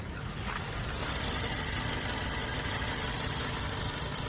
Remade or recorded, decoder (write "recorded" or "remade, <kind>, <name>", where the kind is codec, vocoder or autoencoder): recorded